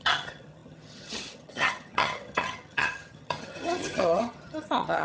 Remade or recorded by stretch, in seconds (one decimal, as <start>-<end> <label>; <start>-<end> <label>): 0.0-5.0 remade